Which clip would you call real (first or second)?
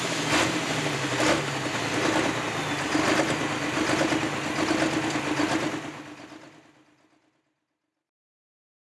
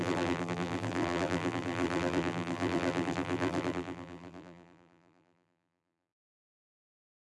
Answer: first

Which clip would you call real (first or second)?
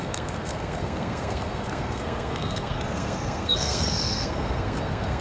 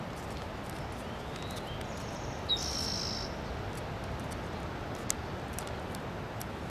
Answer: second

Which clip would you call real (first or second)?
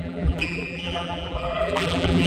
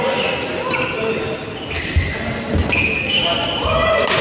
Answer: second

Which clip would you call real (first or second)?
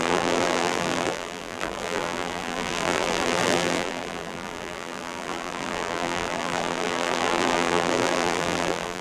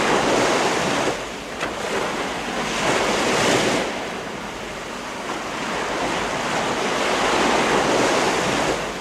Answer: second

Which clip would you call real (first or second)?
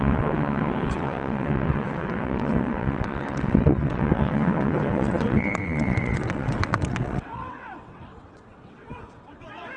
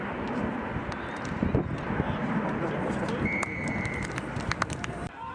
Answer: second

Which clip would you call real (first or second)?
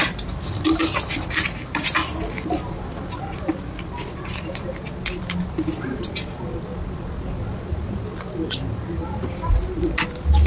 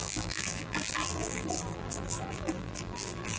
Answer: first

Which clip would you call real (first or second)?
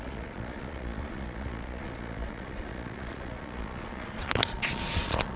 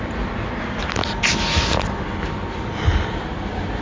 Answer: second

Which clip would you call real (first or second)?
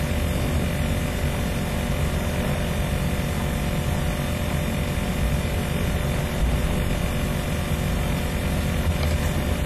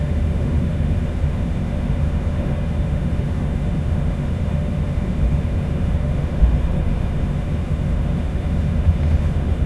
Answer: first